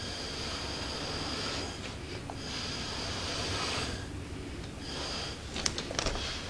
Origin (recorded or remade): recorded